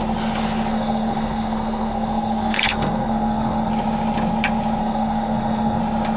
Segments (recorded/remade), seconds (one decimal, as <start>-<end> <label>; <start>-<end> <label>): 0.0-0.7 recorded; 0.7-3.7 remade; 3.7-4.8 recorded; 4.8-5.8 remade; 5.8-6.2 recorded